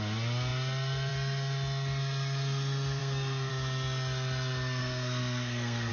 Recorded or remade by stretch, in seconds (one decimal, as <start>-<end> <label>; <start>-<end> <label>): 0.0-3.0 recorded; 3.0-3.5 remade; 3.5-4.8 recorded; 4.8-5.9 remade